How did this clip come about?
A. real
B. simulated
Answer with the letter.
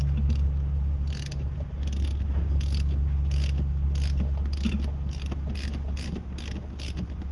A